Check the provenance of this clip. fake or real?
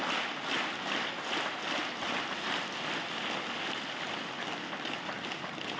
real